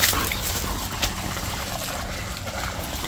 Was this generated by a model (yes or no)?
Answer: no